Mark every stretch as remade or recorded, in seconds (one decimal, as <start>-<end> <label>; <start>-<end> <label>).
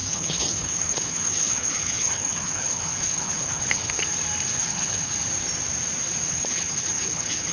0.0-4.0 remade; 4.0-4.6 recorded; 4.6-5.1 remade; 5.1-6.3 recorded; 6.3-7.5 remade